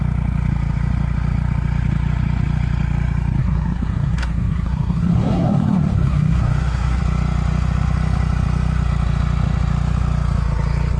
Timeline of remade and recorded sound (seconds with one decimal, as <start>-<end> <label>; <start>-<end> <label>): 0.0-3.4 recorded; 3.4-7.0 remade; 7.0-11.0 recorded